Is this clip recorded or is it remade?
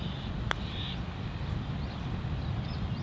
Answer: recorded